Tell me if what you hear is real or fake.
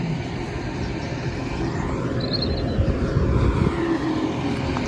real